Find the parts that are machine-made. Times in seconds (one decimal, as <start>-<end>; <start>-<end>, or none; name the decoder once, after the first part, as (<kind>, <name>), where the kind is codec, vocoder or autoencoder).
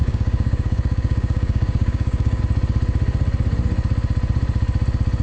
0.0-2.4 (codec, DAC)